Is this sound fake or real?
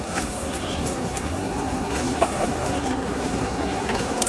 fake